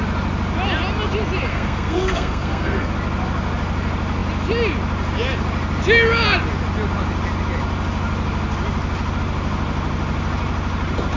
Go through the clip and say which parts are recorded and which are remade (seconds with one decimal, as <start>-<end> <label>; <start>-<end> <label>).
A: 0.0-1.5 recorded; 1.5-2.9 remade; 2.9-11.2 recorded